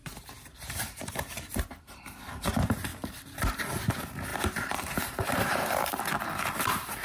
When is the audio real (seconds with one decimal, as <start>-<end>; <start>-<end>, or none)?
2.2-4.3; 6.0-7.0